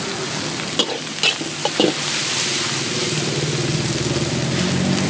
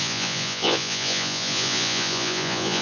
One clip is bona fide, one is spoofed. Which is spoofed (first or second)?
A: second